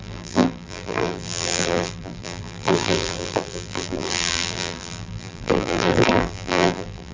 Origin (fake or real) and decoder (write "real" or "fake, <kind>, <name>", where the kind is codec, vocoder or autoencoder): fake, vocoder, BigVGAN v2